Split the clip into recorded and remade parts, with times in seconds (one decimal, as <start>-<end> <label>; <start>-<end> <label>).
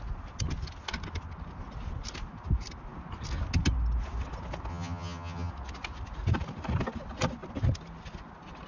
0.0-4.7 recorded; 4.7-5.5 remade; 5.5-8.7 recorded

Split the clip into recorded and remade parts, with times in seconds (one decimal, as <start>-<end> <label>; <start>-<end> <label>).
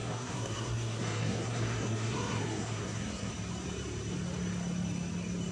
0.0-3.3 remade; 3.3-5.5 recorded